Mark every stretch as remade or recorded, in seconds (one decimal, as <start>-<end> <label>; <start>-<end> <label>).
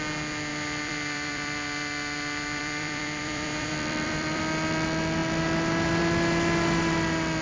0.0-0.5 recorded; 0.5-4.4 remade; 4.4-7.4 recorded